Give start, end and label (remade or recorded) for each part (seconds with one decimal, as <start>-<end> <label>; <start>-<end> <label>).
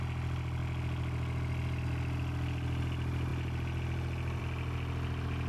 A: 0.0-5.5 recorded